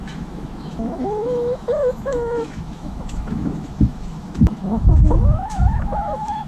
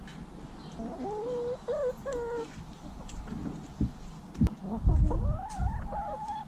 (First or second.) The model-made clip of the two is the first